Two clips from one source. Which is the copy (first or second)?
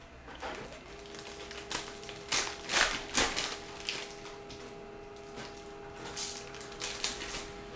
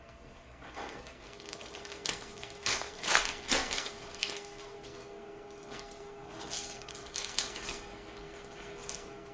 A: second